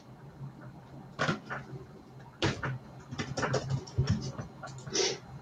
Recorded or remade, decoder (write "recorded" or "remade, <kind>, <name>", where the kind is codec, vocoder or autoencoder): recorded